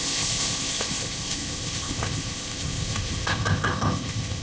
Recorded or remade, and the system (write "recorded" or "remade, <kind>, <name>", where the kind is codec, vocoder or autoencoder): remade, codec, ZipCodec